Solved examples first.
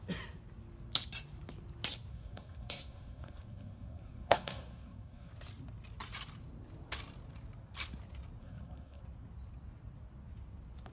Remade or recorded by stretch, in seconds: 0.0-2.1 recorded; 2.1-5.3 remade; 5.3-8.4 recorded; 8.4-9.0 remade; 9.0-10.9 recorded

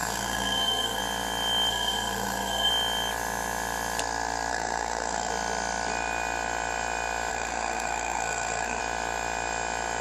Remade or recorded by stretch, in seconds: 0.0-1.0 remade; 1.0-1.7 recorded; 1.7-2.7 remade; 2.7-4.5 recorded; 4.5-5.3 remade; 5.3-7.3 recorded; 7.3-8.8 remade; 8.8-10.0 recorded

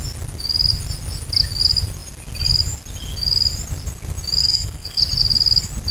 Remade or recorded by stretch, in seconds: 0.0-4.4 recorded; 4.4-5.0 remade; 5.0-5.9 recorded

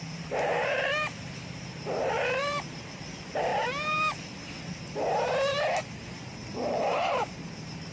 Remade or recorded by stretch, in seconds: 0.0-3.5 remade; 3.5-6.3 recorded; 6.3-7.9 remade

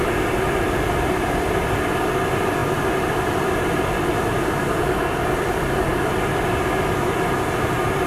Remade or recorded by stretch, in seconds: 0.0-8.1 recorded

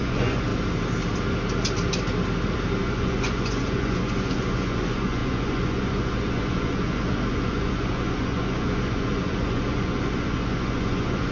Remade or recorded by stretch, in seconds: 0.0-0.5 remade; 0.5-2.8 recorded; 2.8-11.3 remade

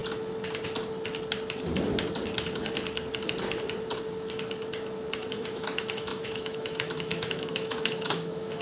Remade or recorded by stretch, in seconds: 0.0-5.2 recorded; 5.2-8.6 remade